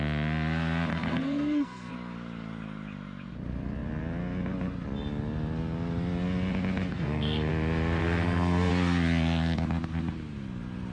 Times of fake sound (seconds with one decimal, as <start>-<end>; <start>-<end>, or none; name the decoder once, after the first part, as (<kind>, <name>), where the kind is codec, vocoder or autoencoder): 0.9-1.9 (codec, SNAC); 6.9-7.5; 8.0-8.7

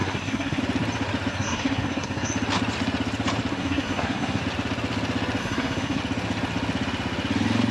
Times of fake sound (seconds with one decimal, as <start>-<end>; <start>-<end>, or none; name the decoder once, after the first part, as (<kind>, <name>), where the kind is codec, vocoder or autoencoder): 0.0-0.6 (codec, SNAC); 1.3-2.3; 3.5-4.4; 5.4-6.0

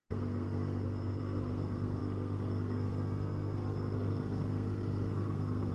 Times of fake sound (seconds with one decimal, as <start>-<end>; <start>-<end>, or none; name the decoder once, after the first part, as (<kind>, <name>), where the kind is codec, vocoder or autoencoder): 0.0-5.7 (codec, SNAC)

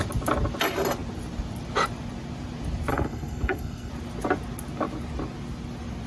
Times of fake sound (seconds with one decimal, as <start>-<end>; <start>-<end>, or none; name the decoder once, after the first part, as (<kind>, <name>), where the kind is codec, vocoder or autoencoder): 2.9-3.9 (codec, SNAC)

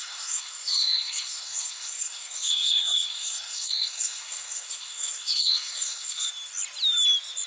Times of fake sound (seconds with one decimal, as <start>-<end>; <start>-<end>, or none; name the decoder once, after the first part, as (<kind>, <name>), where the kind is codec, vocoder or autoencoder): 0.0-6.3 (codec, SNAC)

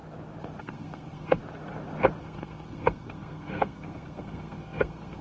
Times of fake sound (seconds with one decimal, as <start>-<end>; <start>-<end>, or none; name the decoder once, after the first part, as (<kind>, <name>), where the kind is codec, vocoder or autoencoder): 0.6-1.4 (codec, SNAC); 2.2-5.2